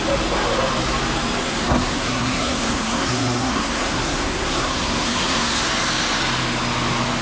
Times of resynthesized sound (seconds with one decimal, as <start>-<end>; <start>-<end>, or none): 1.4-5.7